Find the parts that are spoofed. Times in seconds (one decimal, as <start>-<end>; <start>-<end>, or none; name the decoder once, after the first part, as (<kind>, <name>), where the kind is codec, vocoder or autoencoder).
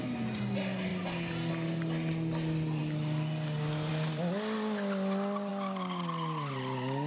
0.9-1.5 (vocoder, BigVGAN v2)